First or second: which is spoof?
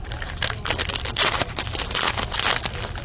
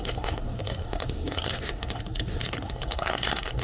second